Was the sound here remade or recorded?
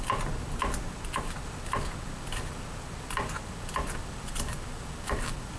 recorded